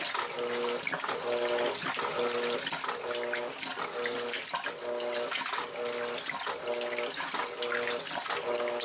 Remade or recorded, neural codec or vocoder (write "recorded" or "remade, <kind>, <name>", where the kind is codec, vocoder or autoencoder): recorded